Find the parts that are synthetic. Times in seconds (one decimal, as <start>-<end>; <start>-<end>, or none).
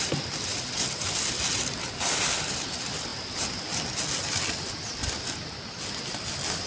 none